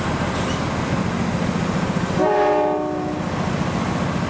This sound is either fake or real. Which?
real